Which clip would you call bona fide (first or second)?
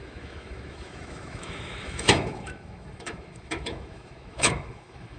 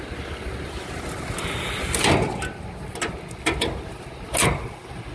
second